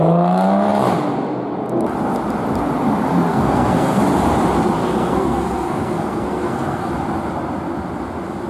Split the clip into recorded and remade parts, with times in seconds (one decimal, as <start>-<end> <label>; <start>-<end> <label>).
0.0-3.3 recorded; 3.3-4.0 remade; 4.0-4.8 recorded; 4.8-6.9 remade; 6.9-8.5 recorded